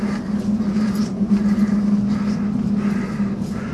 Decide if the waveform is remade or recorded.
recorded